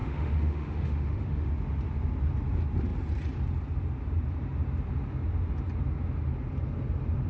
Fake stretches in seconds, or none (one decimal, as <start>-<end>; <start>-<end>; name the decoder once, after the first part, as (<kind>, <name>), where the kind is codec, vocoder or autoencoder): 0.0-1.5 (autoencoder, DAC-VAE)